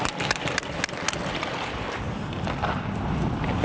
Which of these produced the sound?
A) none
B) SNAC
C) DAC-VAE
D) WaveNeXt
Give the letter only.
A